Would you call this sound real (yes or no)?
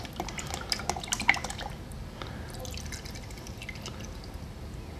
yes